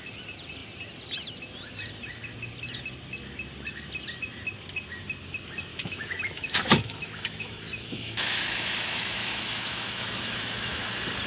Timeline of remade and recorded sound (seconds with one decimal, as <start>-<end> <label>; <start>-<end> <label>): 0.0-5.7 recorded; 5.7-10.9 remade; 10.9-11.3 recorded